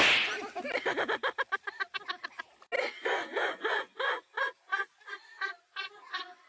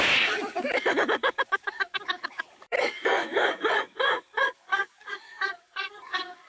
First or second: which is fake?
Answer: second